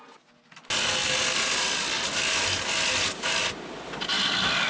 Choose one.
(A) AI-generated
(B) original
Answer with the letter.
B